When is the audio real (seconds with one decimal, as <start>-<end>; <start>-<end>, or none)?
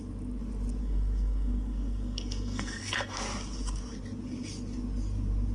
0.0-0.8; 3.2-5.5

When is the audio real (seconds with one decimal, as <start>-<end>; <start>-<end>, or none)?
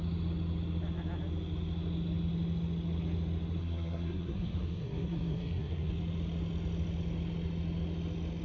0.0-3.6; 5.9-8.4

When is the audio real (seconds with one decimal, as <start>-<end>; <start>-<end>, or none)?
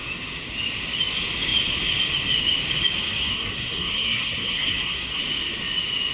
0.0-3.0; 5.2-6.1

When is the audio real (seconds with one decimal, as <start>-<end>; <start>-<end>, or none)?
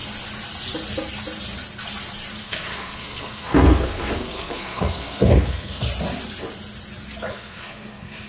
0.0-2.4; 5.9-7.3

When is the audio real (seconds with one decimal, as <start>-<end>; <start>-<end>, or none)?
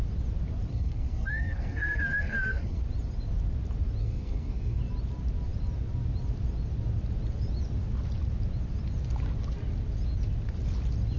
0.0-0.7; 2.8-4.0; 4.8-11.2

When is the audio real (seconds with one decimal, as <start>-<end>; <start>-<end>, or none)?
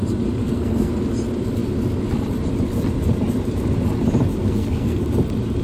0.0-0.4; 0.9-4.4; 5.0-5.6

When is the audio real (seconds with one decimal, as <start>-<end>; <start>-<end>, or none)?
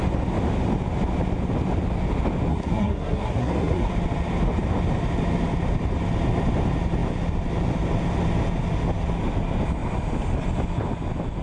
0.0-2.5; 3.9-11.4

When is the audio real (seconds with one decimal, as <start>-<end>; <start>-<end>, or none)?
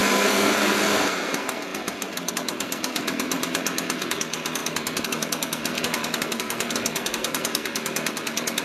none